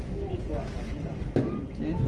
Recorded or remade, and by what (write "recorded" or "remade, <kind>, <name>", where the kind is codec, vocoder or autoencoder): recorded